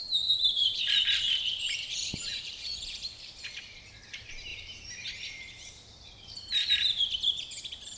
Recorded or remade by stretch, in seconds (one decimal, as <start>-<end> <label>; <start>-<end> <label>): 0.0-2.7 remade; 2.7-4.5 recorded; 4.5-7.0 remade; 7.0-8.0 recorded